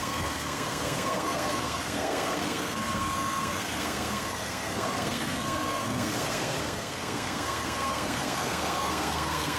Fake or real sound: fake